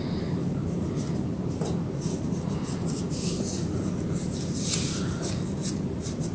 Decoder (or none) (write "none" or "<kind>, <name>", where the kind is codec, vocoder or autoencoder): vocoder, BigVGAN v2